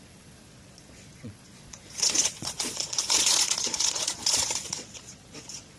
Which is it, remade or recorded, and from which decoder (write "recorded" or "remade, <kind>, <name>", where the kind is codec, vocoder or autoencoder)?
remade, vocoder, Vocos